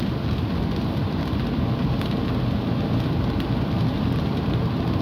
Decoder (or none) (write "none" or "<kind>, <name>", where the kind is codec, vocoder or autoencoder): none